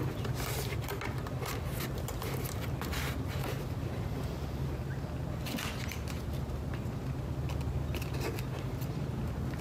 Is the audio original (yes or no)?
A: yes